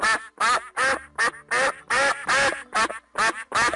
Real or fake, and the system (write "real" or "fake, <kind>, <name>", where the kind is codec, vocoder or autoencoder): real